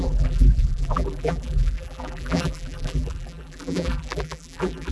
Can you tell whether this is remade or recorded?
remade